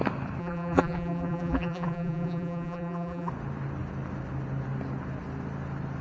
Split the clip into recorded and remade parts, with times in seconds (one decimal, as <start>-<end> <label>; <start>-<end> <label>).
0.0-0.4 recorded; 0.4-3.3 remade; 3.3-6.0 recorded